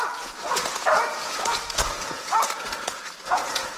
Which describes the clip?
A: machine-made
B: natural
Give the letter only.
A